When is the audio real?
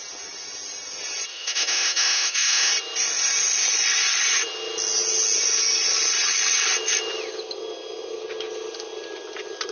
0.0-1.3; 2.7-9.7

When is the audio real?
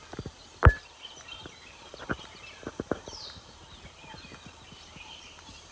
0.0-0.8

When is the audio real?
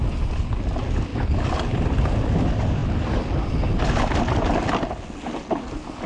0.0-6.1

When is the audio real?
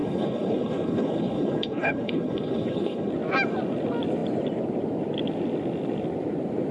3.1-6.7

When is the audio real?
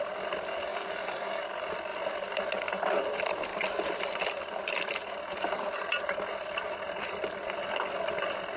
0.0-0.7; 1.4-8.6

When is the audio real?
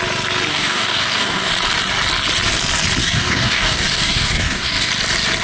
0.0-0.5; 1.5-3.0; 4.9-5.4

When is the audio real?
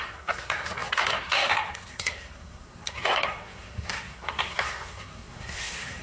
none